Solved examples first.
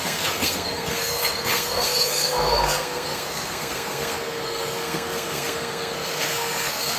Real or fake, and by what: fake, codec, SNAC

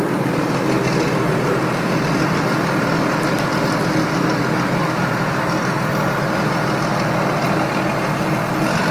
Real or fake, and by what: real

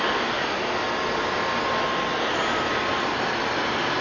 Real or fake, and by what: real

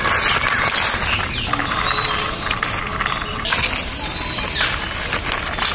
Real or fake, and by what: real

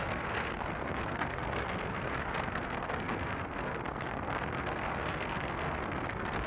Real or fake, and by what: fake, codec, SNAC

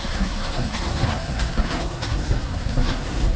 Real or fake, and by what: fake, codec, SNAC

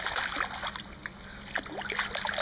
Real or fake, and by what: real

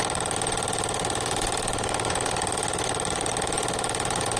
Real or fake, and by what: real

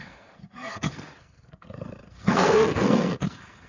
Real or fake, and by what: fake, codec, SNAC